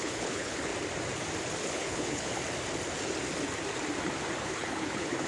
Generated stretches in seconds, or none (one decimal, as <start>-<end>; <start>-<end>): 0.0-0.7; 1.6-2.3; 4.4-5.3

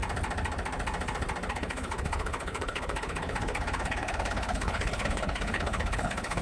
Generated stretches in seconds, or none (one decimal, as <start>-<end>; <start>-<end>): 1.5-6.4

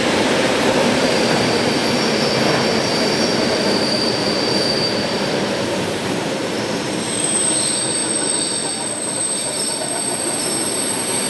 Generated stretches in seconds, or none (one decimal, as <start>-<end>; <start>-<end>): 0.0-1.8; 3.4-8.0; 9.2-11.3

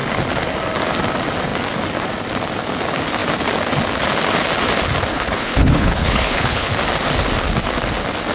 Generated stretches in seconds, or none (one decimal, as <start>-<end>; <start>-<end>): 5.1-6.7

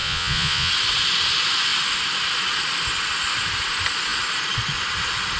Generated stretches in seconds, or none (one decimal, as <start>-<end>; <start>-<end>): 0.0-0.7

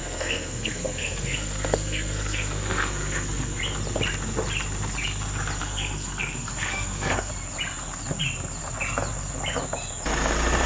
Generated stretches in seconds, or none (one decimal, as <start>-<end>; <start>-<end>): 0.0-3.6; 5.6-7.3